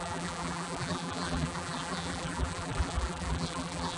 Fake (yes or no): yes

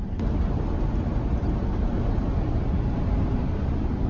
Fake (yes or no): no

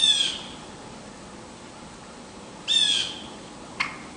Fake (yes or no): no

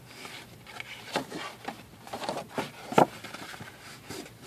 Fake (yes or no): no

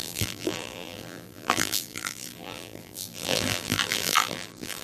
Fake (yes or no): yes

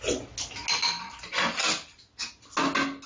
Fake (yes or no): no